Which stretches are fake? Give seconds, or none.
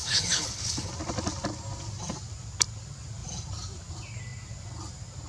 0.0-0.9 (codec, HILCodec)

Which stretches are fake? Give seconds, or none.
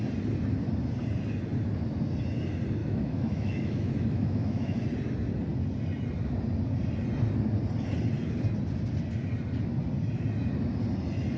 2.8-4.8 (autoencoder, DAC-VAE)